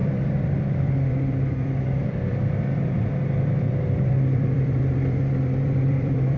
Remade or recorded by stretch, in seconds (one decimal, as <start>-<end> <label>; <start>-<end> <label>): 0.0-6.4 remade